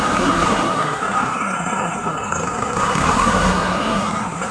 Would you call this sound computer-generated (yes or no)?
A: yes